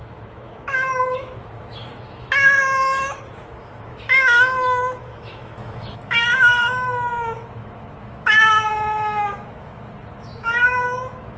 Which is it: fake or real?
fake